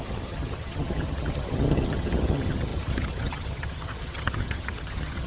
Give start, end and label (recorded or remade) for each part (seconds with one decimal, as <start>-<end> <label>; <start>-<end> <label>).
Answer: 0.0-5.3 remade